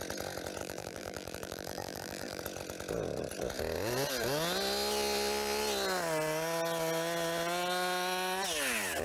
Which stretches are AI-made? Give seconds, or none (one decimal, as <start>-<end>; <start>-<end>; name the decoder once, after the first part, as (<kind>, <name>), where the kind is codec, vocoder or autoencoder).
0.6-2.4 (vocoder, BigVGAN v2)